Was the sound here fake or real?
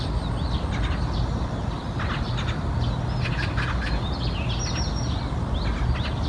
real